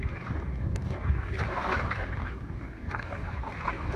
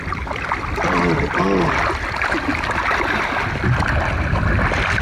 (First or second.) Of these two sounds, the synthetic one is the first